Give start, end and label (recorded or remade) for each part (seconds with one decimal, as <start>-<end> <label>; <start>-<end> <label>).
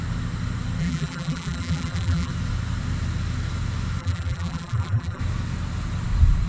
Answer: 0.0-0.8 recorded; 0.8-2.3 remade; 2.3-4.0 recorded; 4.0-5.2 remade; 5.2-6.5 recorded